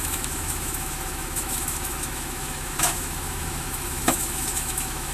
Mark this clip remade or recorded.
remade